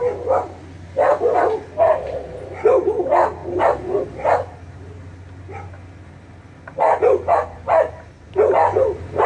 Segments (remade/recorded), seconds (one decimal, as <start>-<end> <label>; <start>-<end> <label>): 0.0-9.3 recorded